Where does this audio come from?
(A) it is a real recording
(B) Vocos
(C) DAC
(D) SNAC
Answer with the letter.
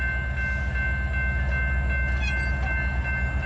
A